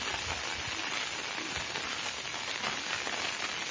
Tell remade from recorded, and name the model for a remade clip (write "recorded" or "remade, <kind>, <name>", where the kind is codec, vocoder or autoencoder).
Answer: recorded